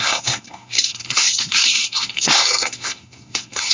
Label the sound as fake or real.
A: fake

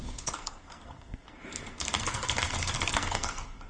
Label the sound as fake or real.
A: fake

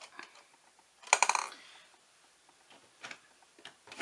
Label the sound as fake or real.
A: real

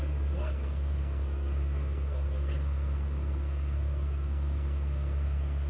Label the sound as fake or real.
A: fake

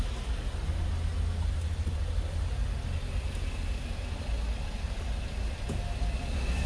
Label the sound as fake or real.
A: real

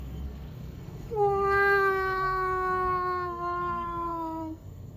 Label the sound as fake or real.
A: fake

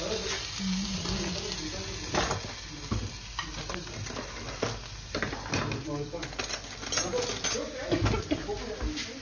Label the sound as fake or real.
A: real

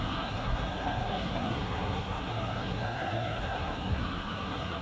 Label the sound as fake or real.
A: fake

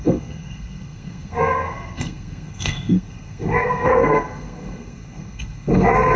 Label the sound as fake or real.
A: fake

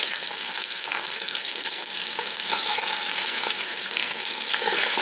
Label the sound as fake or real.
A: fake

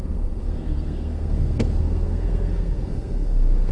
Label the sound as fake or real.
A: fake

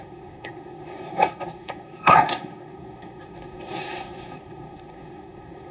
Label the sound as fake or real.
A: fake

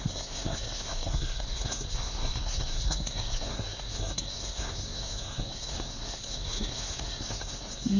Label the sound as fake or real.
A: fake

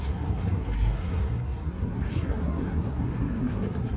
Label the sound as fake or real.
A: fake